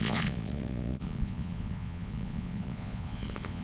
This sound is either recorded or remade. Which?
remade